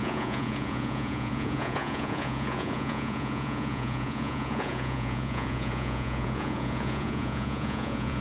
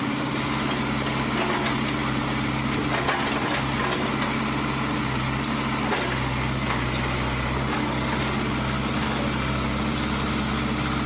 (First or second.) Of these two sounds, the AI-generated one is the first